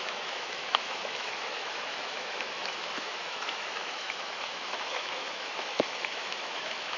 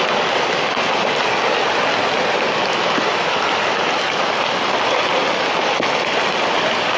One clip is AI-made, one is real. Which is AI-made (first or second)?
first